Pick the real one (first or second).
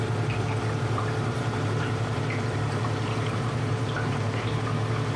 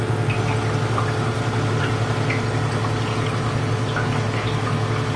second